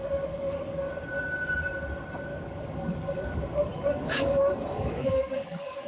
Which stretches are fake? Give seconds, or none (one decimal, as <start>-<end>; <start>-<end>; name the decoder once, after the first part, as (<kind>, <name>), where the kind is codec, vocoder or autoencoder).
0.0-0.9 (codec, DAC); 2.3-5.9